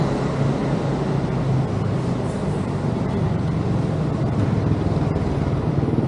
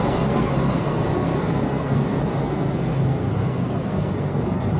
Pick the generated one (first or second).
second